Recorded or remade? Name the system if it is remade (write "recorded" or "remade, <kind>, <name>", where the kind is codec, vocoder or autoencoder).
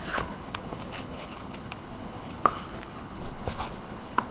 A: remade, codec, HILCodec